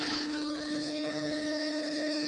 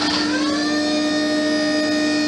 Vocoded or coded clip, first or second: first